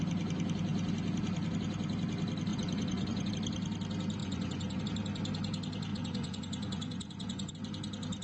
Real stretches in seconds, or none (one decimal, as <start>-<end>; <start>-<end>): 0.0-2.5; 3.3-4.2; 4.8-5.9; 7.5-8.2